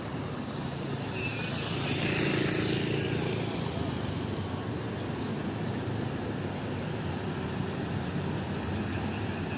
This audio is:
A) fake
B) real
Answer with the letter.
B